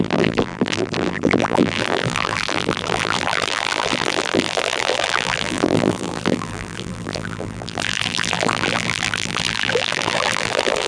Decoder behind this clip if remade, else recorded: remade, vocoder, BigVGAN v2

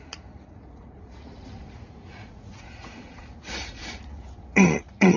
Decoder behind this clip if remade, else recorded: remade, vocoder, Vocos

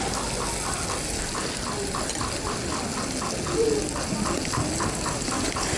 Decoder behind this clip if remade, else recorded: recorded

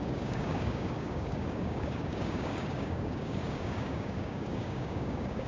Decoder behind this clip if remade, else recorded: remade, codec, DAC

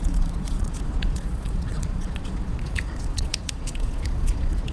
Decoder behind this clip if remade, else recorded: remade, vocoder, Vocos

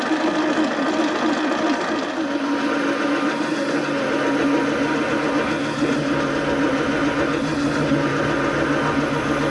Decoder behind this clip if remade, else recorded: recorded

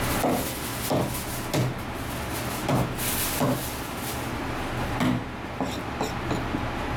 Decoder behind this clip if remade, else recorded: recorded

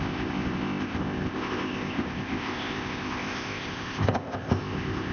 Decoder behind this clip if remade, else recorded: remade, codec, ZipCodec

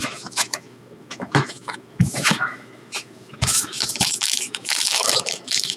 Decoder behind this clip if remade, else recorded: remade, autoencoder, DAC-VAE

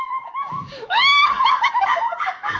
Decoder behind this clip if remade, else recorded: remade, codec, DAC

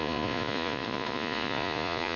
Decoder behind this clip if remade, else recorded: remade, vocoder, Vocos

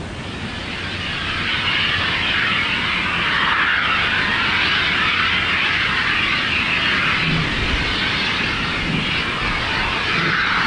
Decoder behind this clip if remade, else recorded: recorded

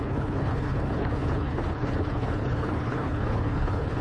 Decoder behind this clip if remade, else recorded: remade, codec, HILCodec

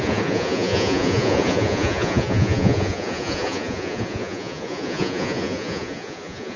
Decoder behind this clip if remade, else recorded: remade, vocoder, Vocos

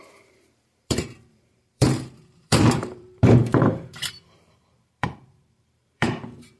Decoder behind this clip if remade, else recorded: remade, vocoder, BigVGAN v2